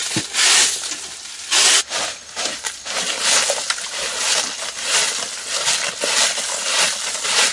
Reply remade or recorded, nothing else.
recorded